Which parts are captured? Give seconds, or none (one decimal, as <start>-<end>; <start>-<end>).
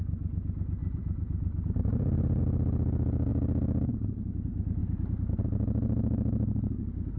0.0-0.8; 2.4-4.8; 5.4-7.2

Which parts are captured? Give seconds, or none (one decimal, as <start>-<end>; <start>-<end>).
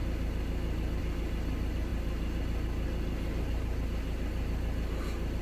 0.0-5.4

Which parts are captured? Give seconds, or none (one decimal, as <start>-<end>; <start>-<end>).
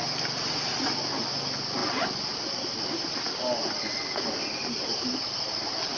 0.0-4.9; 5.6-6.0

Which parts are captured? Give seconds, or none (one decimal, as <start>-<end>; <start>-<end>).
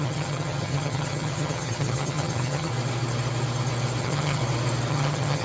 2.7-4.0; 4.4-4.9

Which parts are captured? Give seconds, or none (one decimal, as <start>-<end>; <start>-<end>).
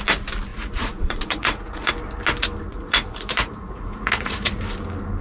0.0-0.5; 1.9-2.7; 4.6-5.2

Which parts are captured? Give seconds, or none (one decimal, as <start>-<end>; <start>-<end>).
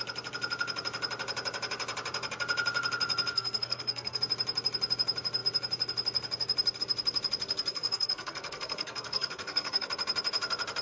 0.0-3.3; 4.2-7.7; 9.9-10.8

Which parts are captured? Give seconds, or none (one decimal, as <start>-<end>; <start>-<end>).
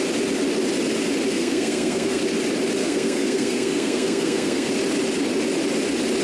0.0-1.3; 2.2-2.8; 4.7-6.2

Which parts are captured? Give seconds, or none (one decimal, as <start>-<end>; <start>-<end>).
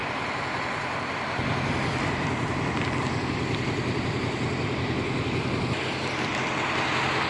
0.0-7.3